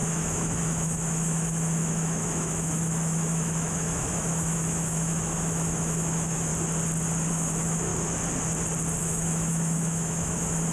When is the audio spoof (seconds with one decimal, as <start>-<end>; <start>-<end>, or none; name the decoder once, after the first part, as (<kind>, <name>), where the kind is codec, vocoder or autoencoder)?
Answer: 0.0-6.5 (autoencoder, DAC-VAE); 7.3-7.9; 9.0-10.7